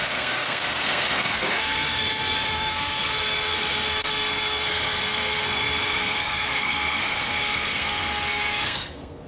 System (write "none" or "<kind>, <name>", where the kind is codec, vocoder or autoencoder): codec, SNAC